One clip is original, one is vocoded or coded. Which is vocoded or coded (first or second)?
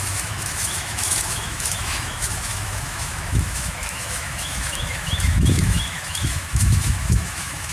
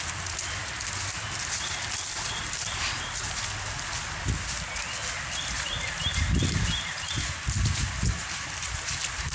first